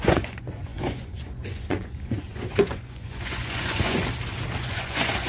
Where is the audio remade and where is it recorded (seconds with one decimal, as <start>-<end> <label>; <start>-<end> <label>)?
0.0-4.0 remade; 4.0-4.6 recorded; 4.6-5.3 remade